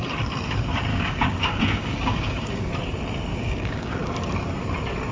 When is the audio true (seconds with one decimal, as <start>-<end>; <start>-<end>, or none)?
0.0-0.9; 2.7-3.3; 4.0-5.1